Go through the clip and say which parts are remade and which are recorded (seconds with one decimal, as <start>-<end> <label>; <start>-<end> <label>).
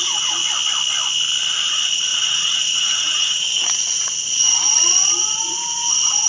0.0-0.4 remade; 0.4-1.7 recorded; 1.7-6.3 remade